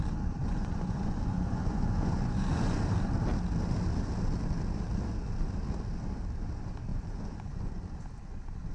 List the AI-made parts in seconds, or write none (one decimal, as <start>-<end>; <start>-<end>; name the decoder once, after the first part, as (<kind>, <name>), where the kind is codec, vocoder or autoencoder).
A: 0.4-2.8 (vocoder, Vocos); 6.9-7.7